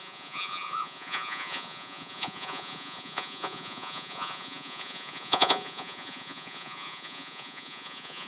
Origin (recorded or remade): remade